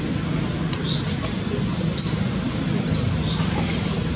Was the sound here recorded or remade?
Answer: recorded